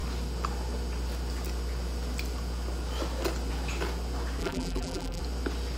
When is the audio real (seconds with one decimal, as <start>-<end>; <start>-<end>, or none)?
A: 0.0-4.4; 5.2-5.8